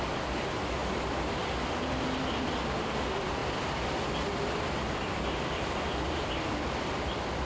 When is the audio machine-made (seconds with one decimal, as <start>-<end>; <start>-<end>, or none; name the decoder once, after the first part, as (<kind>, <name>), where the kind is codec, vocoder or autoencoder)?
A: none

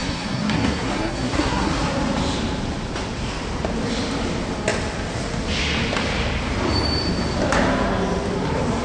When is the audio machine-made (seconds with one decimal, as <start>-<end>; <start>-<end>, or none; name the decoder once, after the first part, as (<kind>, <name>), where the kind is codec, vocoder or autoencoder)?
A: 0.0-1.7 (codec, SNAC)